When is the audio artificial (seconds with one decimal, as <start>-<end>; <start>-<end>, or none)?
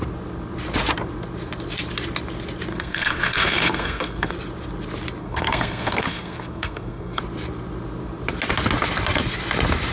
2.7-4.3; 5.2-7.2